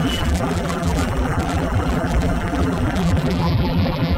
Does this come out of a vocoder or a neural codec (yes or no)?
yes